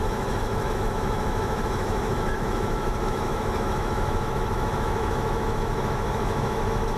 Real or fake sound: fake